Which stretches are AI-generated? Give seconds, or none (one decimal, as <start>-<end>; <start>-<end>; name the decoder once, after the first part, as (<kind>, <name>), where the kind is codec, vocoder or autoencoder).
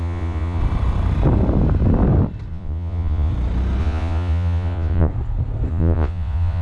0.0-0.6 (vocoder, Vocos); 2.5-3.3; 3.8-5.1; 5.7-6.6